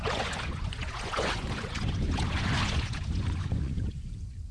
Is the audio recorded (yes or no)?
no